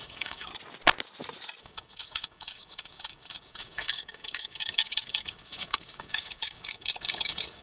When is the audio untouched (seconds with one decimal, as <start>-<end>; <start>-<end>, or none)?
0.5-1.6